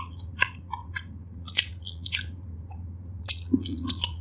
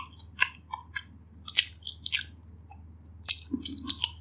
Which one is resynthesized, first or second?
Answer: first